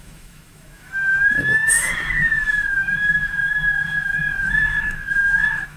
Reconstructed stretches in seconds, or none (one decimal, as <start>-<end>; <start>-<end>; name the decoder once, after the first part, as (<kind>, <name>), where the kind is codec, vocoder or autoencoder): 0.0-5.8 (autoencoder, DAC-VAE)